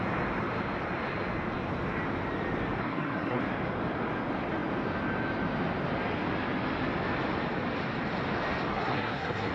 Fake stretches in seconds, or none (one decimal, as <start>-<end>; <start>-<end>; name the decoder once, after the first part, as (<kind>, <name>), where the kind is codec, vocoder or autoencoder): 2.8-3.4 (codec, SNAC); 8.7-9.5